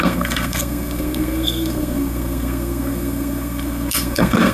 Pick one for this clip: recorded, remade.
remade